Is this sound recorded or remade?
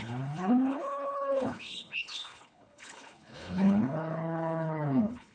remade